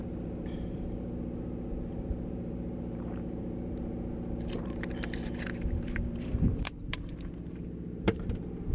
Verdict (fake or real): fake